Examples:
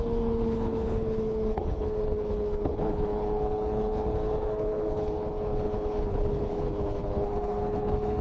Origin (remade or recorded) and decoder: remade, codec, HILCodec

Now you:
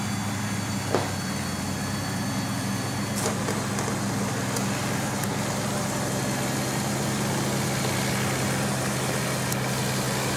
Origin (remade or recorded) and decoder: recorded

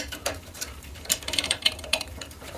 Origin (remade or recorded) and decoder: remade, vocoder, BigVGAN v2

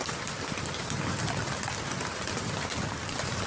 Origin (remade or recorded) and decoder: recorded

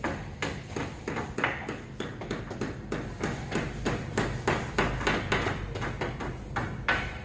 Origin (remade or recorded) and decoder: recorded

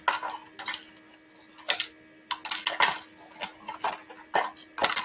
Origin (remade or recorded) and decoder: recorded